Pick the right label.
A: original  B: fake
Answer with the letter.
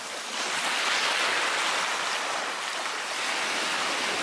A